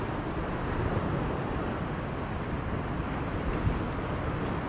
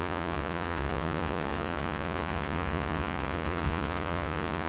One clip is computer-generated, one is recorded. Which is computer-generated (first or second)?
second